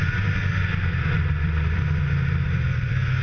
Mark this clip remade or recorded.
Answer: remade